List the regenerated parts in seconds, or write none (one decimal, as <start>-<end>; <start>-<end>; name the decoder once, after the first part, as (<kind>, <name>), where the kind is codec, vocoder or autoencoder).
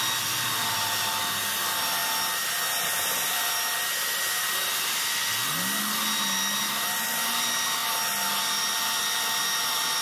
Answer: none